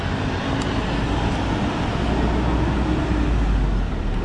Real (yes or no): yes